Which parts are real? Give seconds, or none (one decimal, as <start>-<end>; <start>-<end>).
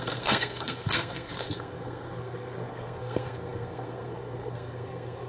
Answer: none